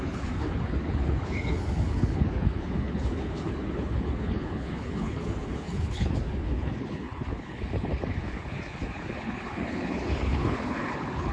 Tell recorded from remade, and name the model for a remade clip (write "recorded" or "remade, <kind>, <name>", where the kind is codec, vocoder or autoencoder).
remade, codec, HILCodec